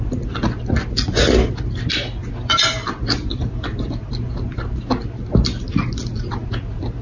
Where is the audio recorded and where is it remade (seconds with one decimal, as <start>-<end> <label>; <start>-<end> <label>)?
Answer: 0.0-7.0 recorded